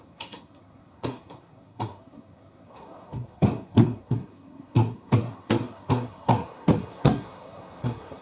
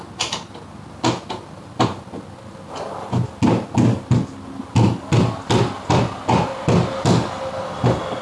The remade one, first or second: first